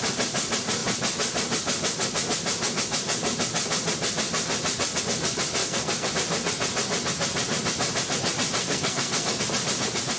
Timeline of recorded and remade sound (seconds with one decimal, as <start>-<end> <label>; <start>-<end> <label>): 0.0-5.6 recorded; 5.6-6.1 remade; 6.1-8.6 recorded; 8.6-9.4 remade; 9.4-10.2 recorded